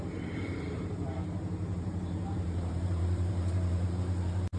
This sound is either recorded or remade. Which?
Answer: remade